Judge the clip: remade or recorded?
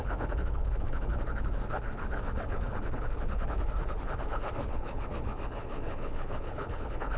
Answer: remade